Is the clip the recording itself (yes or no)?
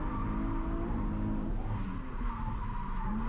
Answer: yes